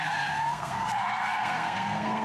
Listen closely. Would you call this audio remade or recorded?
remade